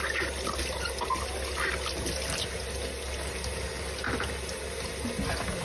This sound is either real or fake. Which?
real